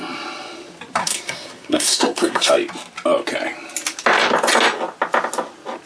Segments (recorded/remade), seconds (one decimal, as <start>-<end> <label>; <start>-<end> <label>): 0.0-1.0 recorded; 1.0-2.5 remade; 2.5-5.9 recorded